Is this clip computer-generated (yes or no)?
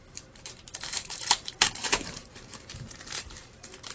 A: yes